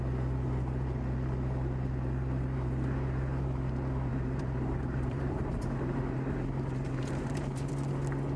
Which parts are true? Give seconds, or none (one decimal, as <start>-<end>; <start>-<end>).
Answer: 0.0-4.1; 7.7-8.4